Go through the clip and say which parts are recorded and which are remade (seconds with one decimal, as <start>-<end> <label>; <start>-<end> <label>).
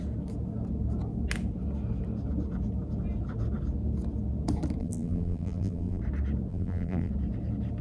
0.0-4.8 recorded; 4.8-6.0 remade; 6.0-6.5 recorded; 6.5-7.1 remade; 7.1-7.8 recorded